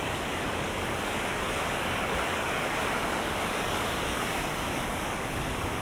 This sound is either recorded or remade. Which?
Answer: remade